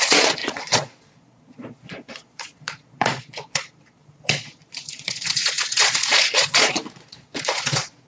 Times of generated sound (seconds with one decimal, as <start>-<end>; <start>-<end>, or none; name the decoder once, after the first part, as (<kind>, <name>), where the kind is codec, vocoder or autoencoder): 0.0-8.1 (vocoder, Vocos)